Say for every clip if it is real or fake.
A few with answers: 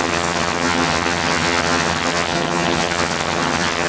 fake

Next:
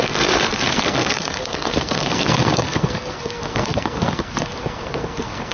fake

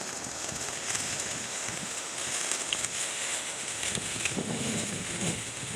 fake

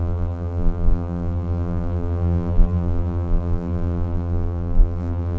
fake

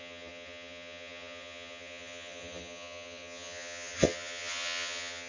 fake